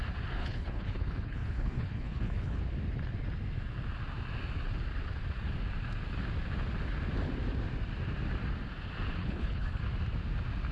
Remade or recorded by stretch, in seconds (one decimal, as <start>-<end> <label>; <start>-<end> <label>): 0.0-0.4 recorded; 0.4-2.6 remade; 2.6-9.2 recorded; 9.2-9.8 remade; 9.8-10.7 recorded